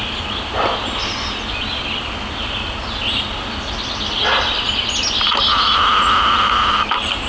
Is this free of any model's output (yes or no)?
yes